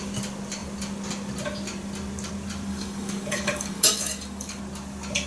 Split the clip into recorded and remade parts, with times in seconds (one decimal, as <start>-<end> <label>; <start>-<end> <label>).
0.0-2.7 recorded; 2.7-4.6 remade; 4.6-5.3 recorded

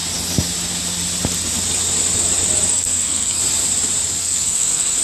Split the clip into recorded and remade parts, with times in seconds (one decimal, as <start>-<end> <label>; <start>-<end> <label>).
0.0-2.7 recorded; 2.7-3.4 remade; 3.4-4.2 recorded; 4.2-5.0 remade

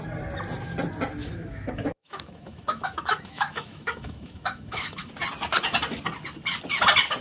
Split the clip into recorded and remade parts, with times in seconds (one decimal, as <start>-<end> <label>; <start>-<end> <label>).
0.0-1.2 recorded; 1.2-5.1 remade; 5.1-7.2 recorded

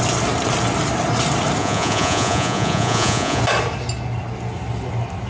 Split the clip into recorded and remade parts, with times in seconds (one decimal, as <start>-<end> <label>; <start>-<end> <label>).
0.0-1.6 recorded; 1.6-3.4 remade; 3.4-5.3 recorded

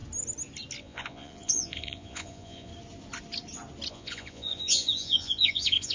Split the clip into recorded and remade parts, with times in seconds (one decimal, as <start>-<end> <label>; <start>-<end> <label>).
0.0-0.8 recorded; 0.8-2.7 remade; 2.7-3.9 recorded; 3.9-5.9 remade

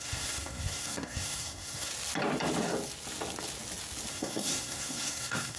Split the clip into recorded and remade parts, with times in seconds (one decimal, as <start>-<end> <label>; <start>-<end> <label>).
0.0-1.9 remade; 1.9-4.1 recorded; 4.1-5.6 remade

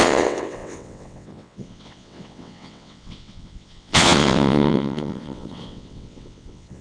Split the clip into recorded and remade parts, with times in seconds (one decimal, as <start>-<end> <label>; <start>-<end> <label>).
0.0-6.8 remade

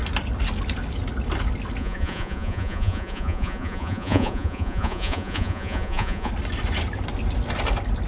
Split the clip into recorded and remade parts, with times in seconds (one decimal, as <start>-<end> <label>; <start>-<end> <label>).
0.0-1.8 recorded; 1.8-6.3 remade; 6.3-8.1 recorded